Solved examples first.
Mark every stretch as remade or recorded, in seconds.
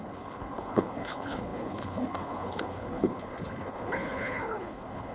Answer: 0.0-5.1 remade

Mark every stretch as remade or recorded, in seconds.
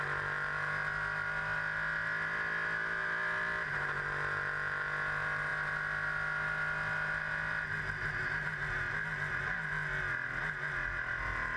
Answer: 0.0-11.6 recorded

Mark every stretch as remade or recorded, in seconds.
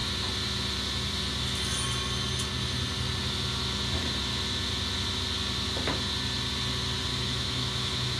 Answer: 0.0-7.1 recorded; 7.1-8.2 remade